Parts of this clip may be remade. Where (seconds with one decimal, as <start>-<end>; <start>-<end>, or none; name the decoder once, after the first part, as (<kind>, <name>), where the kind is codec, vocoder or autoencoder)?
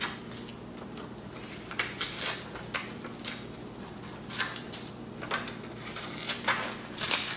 none